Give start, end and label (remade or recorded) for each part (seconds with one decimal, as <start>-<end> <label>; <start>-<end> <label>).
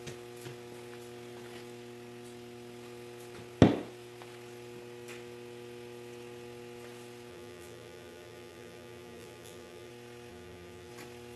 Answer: 0.0-7.3 recorded; 7.3-9.9 remade; 9.9-10.3 recorded; 10.3-10.9 remade; 10.9-11.4 recorded